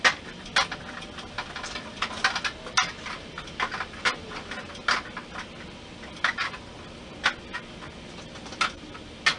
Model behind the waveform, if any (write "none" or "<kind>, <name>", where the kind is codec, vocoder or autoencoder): none